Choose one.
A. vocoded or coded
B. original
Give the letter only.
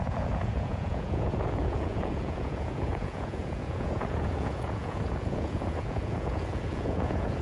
A